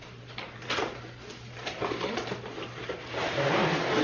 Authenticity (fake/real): real